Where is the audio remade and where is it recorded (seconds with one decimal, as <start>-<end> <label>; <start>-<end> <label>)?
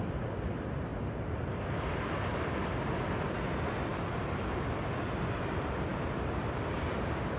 0.0-7.4 recorded